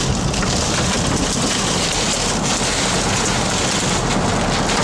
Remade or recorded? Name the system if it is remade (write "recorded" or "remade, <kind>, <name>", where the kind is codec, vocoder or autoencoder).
recorded